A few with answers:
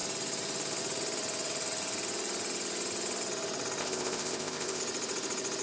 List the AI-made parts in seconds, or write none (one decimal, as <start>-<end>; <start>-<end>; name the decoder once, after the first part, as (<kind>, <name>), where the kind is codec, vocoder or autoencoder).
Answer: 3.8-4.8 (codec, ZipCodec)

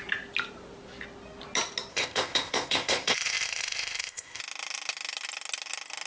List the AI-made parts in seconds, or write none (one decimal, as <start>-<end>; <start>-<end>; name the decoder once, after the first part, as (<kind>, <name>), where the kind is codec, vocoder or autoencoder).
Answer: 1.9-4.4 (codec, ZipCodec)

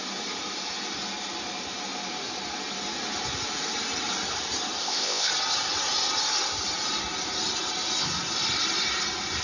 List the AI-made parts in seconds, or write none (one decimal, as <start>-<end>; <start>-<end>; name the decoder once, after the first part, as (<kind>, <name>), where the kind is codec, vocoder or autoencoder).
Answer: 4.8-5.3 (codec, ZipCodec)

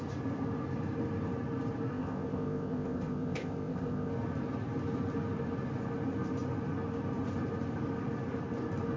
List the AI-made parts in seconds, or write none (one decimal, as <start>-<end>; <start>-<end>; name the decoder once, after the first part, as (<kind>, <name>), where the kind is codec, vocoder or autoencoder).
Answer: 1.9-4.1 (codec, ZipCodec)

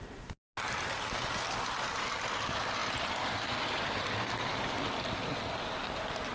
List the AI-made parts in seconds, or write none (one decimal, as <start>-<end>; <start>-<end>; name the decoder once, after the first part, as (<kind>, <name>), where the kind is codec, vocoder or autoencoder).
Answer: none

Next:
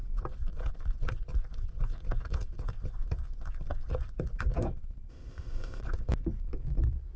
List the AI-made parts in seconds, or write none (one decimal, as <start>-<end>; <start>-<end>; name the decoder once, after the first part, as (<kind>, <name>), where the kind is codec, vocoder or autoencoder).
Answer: 5.1-5.8 (codec, ZipCodec)